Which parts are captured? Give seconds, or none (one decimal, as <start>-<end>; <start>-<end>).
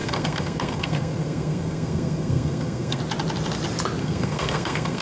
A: 3.0-4.0